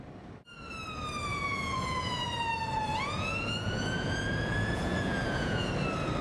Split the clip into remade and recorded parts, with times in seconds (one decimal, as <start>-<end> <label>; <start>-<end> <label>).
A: 0.0-1.3 recorded; 1.3-2.3 remade; 2.3-2.9 recorded; 2.9-5.7 remade; 5.7-6.2 recorded

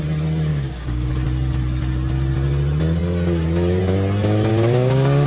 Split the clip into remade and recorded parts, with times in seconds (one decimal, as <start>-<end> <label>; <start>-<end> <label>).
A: 0.0-0.5 recorded; 0.5-1.1 remade; 1.1-4.5 recorded; 4.5-5.3 remade

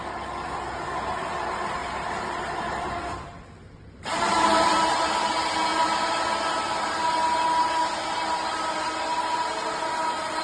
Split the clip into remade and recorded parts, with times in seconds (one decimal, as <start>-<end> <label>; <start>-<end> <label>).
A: 0.0-10.4 recorded